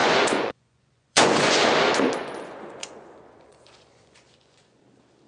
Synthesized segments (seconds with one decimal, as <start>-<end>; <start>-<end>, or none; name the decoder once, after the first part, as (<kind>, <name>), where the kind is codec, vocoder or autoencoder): 0.0-1.7 (vocoder, Vocos); 2.2-4.8